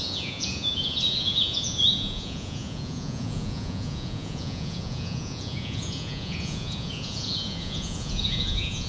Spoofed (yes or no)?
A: yes